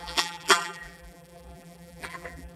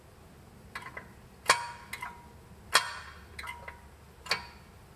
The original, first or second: second